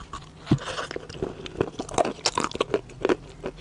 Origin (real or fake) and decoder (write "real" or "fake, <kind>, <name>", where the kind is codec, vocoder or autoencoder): real